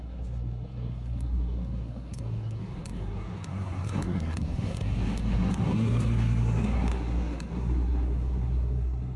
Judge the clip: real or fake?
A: fake